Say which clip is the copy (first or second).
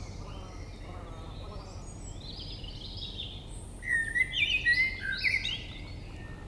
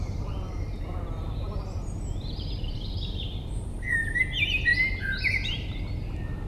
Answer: second